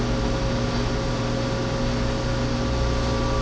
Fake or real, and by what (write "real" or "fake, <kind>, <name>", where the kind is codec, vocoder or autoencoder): real